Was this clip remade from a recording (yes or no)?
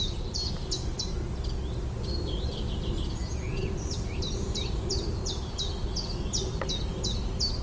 no